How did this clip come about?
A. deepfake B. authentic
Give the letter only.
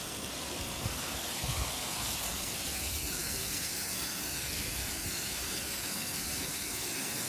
A